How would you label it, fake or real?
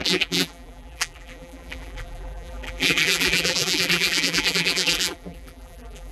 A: fake